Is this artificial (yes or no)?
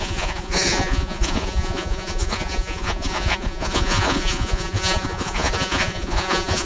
yes